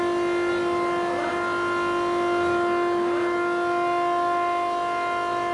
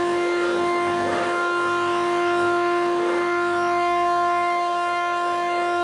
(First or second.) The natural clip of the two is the first